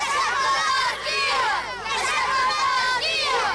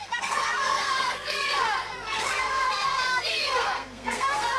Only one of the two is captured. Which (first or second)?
first